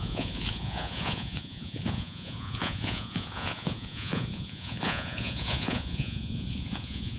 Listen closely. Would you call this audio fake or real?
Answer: fake